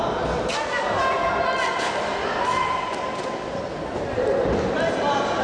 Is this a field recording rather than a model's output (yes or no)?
yes